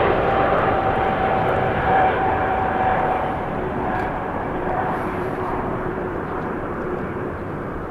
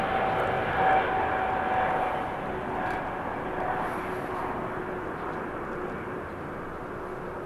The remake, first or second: first